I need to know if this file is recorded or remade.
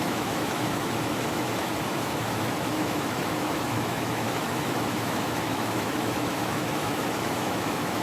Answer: remade